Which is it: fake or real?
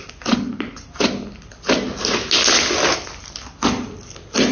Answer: real